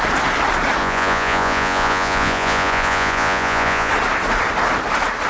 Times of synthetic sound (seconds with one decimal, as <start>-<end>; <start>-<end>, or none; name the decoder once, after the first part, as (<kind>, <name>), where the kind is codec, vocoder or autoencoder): 0.8-3.9 (vocoder, Vocos)